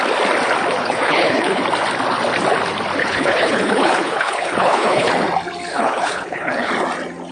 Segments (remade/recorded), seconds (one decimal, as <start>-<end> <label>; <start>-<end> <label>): 0.0-0.8 recorded; 0.8-1.6 remade; 1.6-3.0 recorded; 3.0-5.1 remade; 5.1-5.7 recorded; 5.7-6.7 remade; 6.7-7.3 recorded